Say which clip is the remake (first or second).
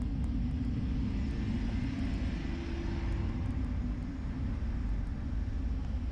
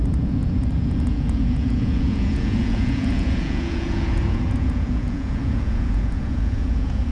second